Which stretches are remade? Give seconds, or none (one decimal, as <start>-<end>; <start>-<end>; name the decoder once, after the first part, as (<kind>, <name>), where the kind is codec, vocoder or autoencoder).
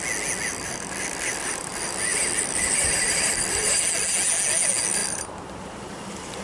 0.5-1.7 (vocoder, BigVGAN v2); 2.1-3.8; 5.0-6.4